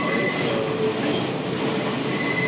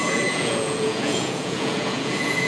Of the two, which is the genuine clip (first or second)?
first